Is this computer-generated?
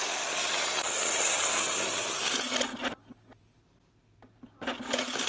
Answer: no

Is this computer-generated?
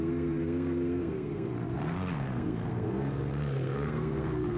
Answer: yes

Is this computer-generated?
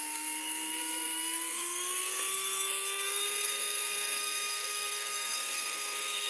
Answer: yes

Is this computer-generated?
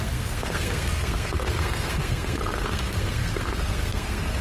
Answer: yes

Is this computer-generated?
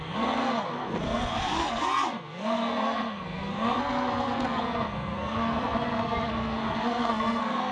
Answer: yes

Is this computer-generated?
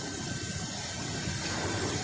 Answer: no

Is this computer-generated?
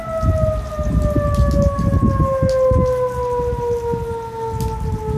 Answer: no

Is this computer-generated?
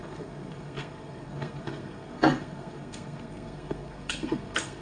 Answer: yes